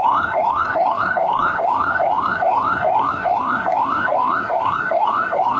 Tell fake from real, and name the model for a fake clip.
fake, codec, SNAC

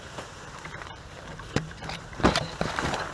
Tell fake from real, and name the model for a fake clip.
fake, vocoder, BigVGAN v2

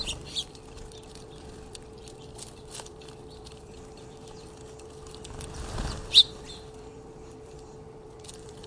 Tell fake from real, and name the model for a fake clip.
fake, vocoder, BigVGAN v2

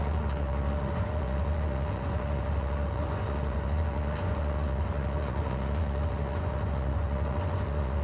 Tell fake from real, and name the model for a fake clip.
fake, vocoder, Vocos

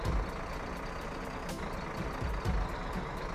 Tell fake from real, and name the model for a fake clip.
real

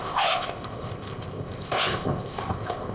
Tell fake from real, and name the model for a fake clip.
fake, codec, ZipCodec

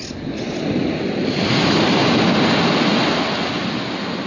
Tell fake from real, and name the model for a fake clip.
real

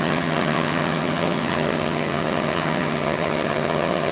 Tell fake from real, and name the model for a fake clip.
fake, vocoder, HiFi-GAN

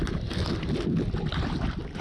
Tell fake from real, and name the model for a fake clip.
real